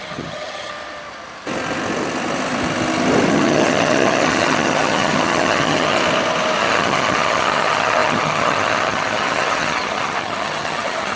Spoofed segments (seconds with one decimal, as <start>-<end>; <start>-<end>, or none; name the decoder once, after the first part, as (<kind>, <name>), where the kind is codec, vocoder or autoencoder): 0.0-0.7 (vocoder, HiFi-GAN); 3.3-6.0; 6.6-11.2